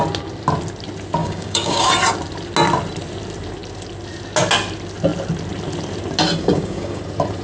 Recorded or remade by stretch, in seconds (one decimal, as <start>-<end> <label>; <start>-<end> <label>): 0.0-1.2 recorded; 1.2-1.9 remade; 1.9-6.4 recorded; 6.4-7.0 remade; 7.0-7.4 recorded